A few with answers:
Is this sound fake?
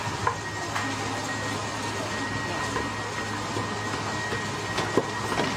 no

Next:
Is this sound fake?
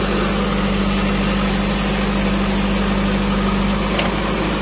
no